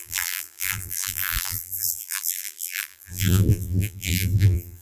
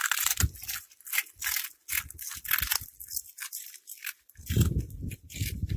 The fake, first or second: first